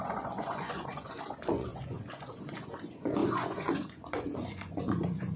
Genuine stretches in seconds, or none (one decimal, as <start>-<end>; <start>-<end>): none